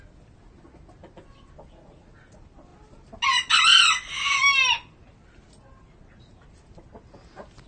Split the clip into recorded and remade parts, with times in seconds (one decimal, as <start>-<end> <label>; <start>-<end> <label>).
0.0-7.7 recorded